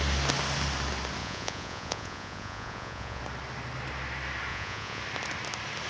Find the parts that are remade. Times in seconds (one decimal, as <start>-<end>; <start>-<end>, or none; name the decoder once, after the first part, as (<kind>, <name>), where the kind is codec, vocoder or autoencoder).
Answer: 1.2-3.2 (vocoder, Vocos); 4.5-5.0